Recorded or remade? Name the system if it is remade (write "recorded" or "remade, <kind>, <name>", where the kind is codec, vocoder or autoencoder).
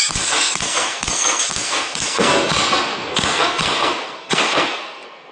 remade, codec, SNAC